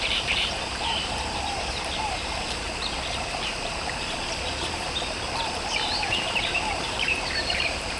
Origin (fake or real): fake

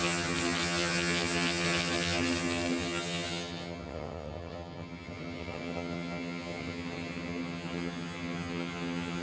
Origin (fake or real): fake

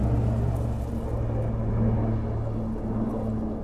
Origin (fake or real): real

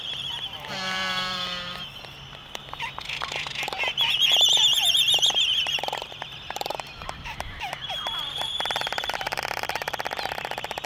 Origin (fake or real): fake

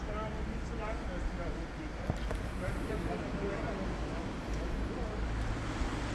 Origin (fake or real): real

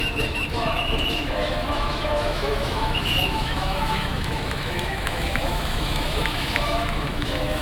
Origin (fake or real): fake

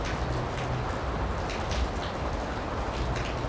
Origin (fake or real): real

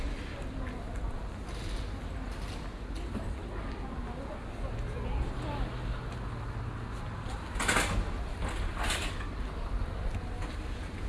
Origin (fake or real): real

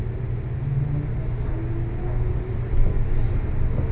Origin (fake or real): real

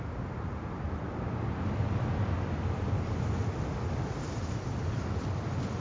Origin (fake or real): real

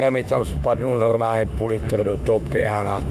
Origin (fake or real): fake